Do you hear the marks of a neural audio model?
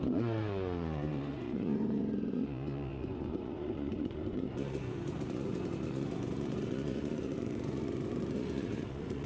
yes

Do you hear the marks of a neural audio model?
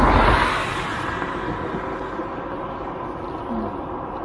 no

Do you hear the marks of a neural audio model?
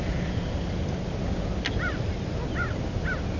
no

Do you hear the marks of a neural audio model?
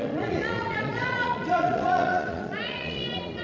yes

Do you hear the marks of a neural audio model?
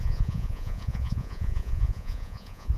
yes